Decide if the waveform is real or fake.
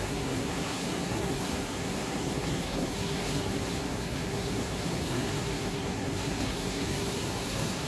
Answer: fake